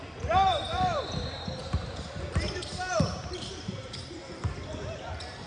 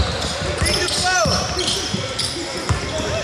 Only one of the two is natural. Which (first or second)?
second